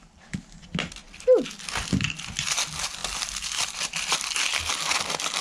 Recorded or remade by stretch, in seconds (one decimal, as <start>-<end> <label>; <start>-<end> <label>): 0.0-5.4 recorded